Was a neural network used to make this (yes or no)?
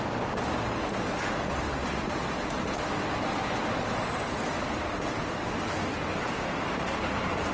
no